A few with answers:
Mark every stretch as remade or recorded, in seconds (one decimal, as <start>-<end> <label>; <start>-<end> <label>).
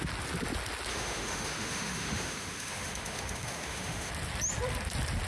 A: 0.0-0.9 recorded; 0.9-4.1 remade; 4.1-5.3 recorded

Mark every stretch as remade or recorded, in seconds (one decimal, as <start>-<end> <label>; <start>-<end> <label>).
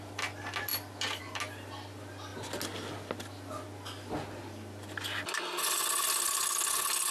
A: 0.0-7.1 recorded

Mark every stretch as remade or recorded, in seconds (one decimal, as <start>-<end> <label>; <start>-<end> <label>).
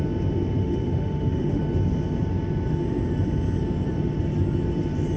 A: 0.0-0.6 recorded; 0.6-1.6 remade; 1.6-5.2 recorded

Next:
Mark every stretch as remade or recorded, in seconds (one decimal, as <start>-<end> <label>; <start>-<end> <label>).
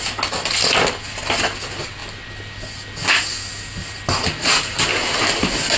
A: 0.0-5.8 recorded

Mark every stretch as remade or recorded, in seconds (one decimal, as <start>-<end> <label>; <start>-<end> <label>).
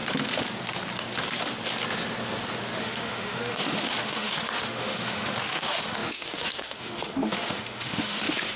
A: 0.0-2.8 recorded; 2.8-8.6 remade